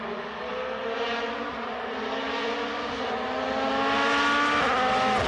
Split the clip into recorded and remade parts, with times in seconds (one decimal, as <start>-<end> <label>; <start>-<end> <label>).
0.0-5.3 recorded